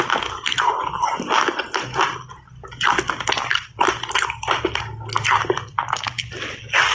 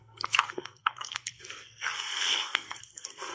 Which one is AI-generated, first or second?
second